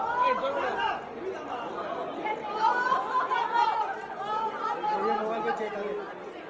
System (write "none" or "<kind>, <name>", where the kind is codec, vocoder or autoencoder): none